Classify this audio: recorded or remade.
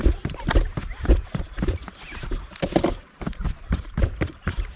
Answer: recorded